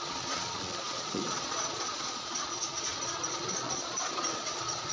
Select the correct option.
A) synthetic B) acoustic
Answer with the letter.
A